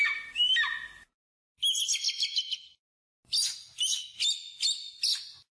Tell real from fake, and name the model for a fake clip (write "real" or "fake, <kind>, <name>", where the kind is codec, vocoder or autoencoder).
real